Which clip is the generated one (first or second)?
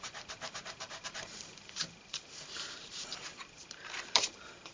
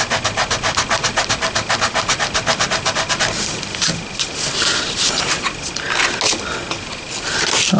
first